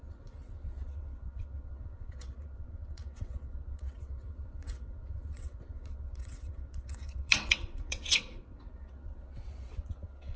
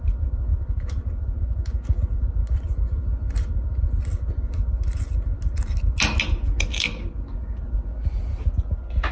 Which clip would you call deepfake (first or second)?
first